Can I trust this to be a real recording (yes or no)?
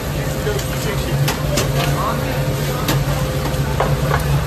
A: yes